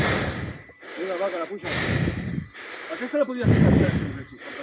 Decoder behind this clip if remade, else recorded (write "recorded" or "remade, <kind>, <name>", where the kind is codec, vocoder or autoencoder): recorded